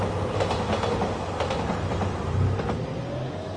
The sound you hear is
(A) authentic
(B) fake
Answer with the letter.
A